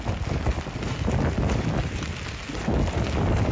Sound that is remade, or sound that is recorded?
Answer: recorded